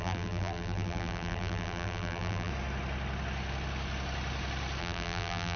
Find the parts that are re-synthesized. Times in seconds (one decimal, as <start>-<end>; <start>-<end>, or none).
0.0-2.5; 4.8-5.6